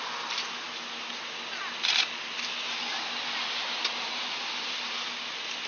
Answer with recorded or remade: recorded